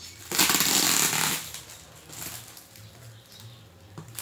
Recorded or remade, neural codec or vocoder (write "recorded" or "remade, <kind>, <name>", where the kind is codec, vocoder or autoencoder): recorded